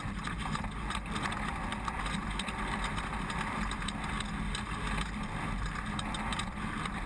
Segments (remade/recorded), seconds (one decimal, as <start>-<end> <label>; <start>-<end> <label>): 0.0-7.1 recorded